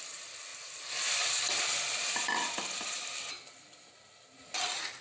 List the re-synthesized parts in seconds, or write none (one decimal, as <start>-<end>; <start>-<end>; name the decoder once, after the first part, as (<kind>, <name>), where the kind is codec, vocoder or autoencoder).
none